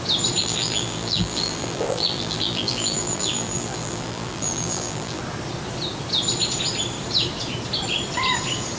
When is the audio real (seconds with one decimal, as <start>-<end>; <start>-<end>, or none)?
0.0-0.4; 5.2-8.8